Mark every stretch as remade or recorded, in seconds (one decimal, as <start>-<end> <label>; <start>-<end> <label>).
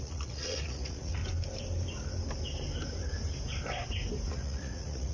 0.0-1.2 remade; 1.2-4.3 recorded; 4.3-5.1 remade